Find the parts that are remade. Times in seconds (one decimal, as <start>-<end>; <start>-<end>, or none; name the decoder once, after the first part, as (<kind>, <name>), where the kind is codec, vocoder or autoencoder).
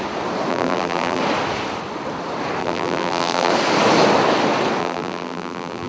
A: 0.5-1.2 (vocoder, BigVGAN v2); 2.6-3.5; 4.8-5.9